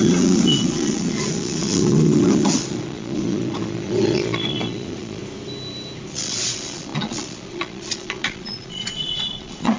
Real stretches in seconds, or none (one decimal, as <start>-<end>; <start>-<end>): 5.2-6.1

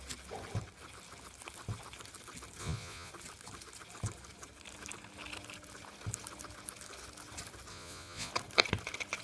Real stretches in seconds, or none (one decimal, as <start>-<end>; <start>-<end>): 0.0-2.6; 3.1-7.7; 8.3-9.2

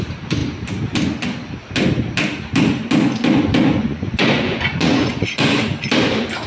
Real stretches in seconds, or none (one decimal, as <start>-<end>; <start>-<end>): 0.0-3.7; 5.6-6.5